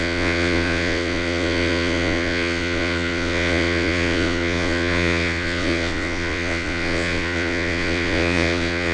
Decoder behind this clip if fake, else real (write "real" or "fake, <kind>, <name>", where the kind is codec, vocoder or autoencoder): fake, vocoder, Vocos